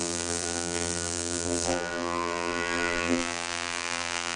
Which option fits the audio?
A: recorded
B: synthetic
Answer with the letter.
B